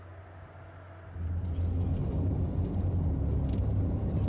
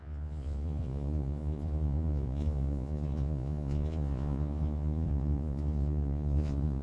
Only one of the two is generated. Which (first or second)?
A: second